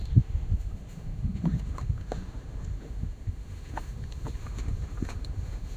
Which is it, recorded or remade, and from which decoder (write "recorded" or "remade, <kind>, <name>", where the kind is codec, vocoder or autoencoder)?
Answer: remade, autoencoder, DAC-VAE